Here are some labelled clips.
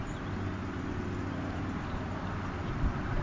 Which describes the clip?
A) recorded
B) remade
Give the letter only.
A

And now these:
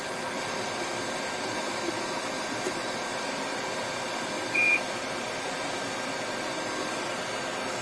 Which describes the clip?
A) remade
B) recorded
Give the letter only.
A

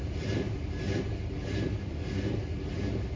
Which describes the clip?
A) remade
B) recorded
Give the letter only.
B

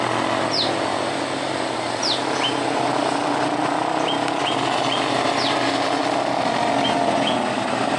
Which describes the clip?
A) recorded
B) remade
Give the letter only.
A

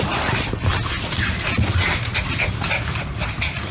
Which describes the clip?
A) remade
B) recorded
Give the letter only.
A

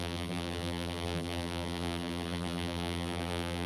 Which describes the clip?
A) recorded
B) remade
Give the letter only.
B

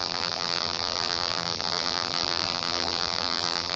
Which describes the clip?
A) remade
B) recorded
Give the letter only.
A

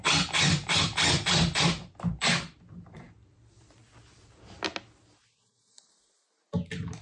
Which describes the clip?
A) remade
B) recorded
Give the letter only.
B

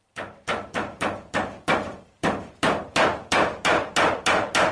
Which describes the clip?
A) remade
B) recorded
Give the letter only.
A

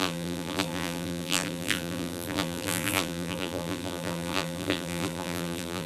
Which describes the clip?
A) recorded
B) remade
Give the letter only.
B